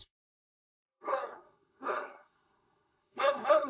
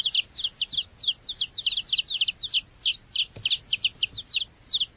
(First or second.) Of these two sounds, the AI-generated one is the first